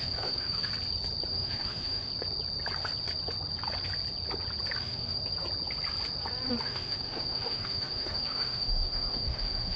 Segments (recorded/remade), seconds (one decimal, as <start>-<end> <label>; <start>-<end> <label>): 0.0-0.7 remade; 0.7-1.3 recorded; 1.3-2.1 remade; 2.1-4.8 recorded; 4.8-5.2 remade; 5.2-6.6 recorded; 6.6-9.8 remade